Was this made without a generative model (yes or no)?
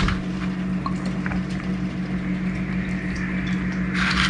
yes